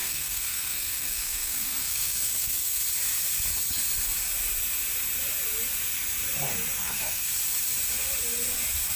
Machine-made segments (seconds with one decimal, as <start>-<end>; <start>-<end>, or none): 0.0-2.8; 6.8-7.3